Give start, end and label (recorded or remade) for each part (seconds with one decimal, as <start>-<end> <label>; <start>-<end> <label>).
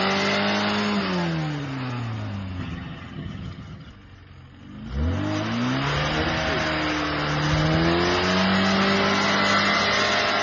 0.0-2.6 recorded; 2.6-3.9 remade; 3.9-10.4 recorded